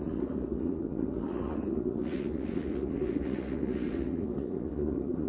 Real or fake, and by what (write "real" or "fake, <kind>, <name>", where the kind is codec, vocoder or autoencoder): fake, vocoder, Vocos